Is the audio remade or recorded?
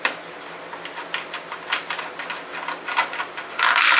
recorded